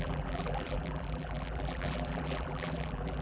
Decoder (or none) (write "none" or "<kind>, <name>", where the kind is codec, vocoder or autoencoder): vocoder, BigVGAN v2